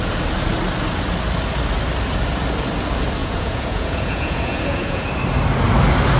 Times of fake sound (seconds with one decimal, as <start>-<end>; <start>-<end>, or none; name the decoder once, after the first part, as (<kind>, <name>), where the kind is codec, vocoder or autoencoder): 3.2-5.1 (vocoder, Vocos)